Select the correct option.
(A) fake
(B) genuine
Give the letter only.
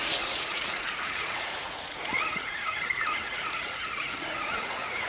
A